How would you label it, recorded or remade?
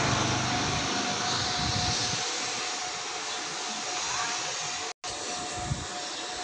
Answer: recorded